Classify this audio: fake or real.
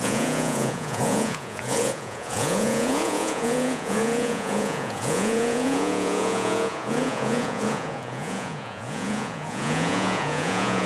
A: fake